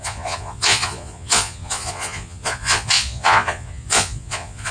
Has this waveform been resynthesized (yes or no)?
yes